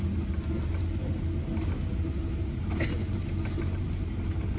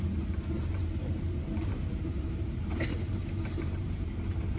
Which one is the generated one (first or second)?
second